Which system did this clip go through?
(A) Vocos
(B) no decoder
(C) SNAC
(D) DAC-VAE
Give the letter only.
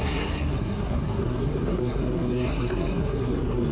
C